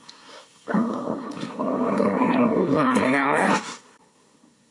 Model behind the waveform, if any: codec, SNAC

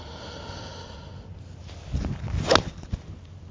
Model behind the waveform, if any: none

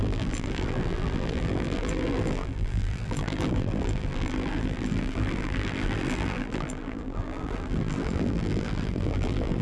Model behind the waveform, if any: vocoder, BigVGAN v2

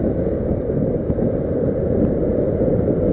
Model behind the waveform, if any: none